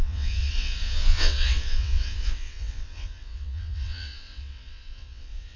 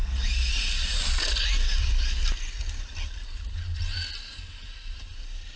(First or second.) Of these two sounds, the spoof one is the first